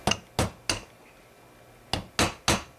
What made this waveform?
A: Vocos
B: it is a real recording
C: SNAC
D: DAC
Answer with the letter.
B